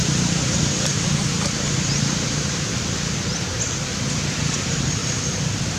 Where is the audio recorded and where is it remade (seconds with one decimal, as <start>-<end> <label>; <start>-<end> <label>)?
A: 0.0-2.8 remade; 2.8-5.0 recorded; 5.0-5.8 remade